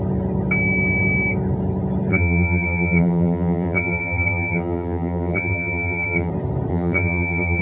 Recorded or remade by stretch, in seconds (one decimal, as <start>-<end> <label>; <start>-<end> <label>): 0.0-2.1 recorded; 2.1-6.3 remade; 6.3-6.7 recorded; 6.7-7.6 remade